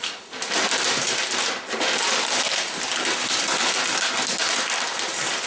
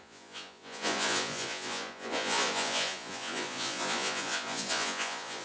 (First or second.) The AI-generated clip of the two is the second